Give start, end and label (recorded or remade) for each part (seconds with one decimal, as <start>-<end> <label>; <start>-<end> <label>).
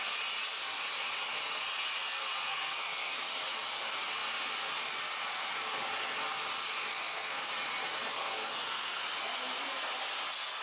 0.0-2.5 recorded; 2.5-3.1 remade; 3.1-6.9 recorded; 6.9-7.5 remade; 7.5-8.1 recorded; 8.1-9.0 remade; 9.0-10.6 recorded